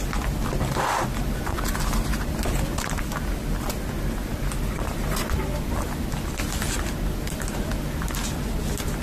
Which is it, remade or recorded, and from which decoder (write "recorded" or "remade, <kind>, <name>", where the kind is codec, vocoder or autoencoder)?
recorded